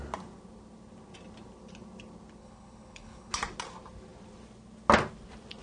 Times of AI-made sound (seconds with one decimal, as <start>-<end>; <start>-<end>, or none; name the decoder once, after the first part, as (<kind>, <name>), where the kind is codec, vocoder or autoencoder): 2.4-3.3 (codec, HILCodec)